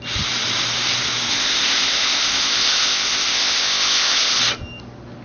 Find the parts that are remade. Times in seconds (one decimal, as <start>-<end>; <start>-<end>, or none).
1.3-4.4